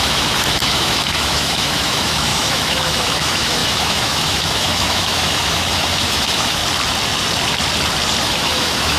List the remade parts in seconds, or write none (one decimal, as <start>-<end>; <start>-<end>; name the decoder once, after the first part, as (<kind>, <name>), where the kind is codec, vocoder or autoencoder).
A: 0.0-6.6 (autoencoder, DAC-VAE); 8.2-9.0